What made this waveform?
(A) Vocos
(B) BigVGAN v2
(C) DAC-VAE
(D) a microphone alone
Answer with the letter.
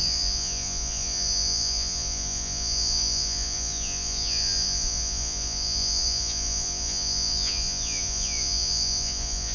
A